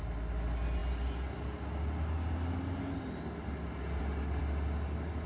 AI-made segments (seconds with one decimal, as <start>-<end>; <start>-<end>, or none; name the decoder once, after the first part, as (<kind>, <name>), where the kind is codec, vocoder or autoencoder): none